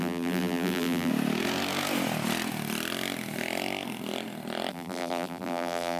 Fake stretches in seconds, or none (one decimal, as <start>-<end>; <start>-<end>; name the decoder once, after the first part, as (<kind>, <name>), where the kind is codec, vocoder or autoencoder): 0.0-1.1 (vocoder, BigVGAN v2); 4.7-6.0